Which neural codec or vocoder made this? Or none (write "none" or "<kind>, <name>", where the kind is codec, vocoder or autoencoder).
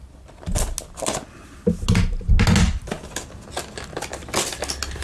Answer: none